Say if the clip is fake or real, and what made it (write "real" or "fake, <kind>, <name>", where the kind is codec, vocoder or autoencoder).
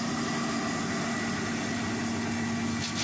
real